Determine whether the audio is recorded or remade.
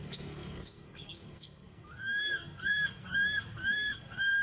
remade